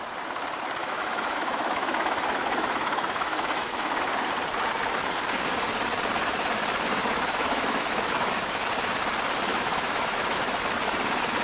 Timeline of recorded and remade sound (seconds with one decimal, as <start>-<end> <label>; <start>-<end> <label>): 0.0-0.8 recorded; 0.8-4.0 remade; 4.0-7.0 recorded; 7.0-8.3 remade; 8.3-9.5 recorded; 9.5-10.6 remade; 10.6-11.4 recorded